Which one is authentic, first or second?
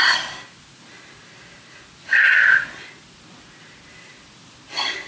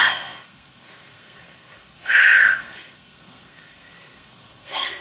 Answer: first